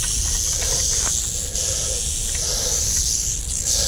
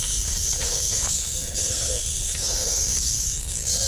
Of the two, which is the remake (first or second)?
second